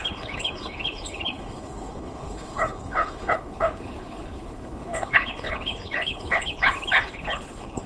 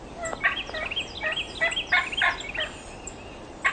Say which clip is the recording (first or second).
second